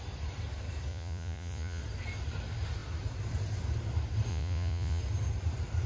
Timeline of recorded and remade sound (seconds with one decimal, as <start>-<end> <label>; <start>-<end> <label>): 0.0-0.9 recorded; 0.9-1.8 remade; 1.8-4.3 recorded; 4.3-5.0 remade; 5.0-5.9 recorded